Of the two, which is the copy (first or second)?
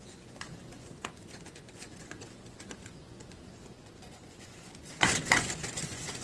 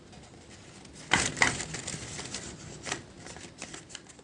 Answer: first